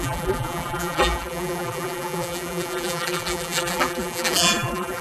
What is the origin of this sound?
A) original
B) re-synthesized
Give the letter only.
B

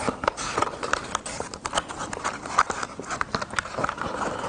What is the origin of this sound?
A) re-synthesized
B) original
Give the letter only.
B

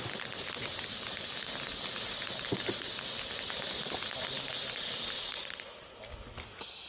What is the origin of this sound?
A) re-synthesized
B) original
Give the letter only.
B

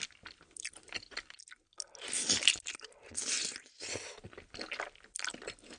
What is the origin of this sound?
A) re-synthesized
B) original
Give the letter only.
B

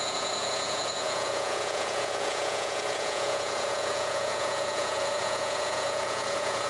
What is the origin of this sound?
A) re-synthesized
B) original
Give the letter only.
A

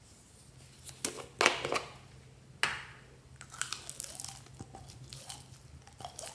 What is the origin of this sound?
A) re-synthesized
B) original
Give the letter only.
B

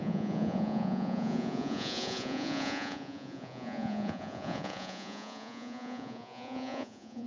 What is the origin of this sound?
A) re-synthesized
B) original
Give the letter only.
A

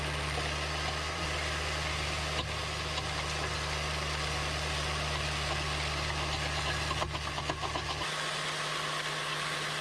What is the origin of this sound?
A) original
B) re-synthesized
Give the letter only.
A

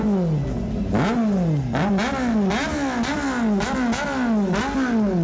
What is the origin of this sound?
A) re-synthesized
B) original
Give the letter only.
B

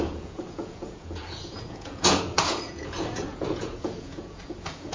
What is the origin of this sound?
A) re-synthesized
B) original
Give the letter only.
A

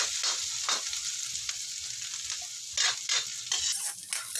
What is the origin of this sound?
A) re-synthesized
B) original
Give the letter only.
B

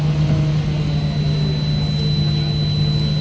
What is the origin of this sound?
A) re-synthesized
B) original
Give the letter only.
B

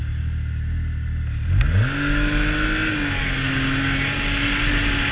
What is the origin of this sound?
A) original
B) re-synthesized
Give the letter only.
A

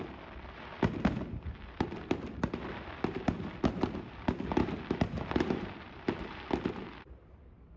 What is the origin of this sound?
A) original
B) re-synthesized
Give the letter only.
B